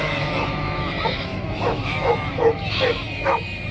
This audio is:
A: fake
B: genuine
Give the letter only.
A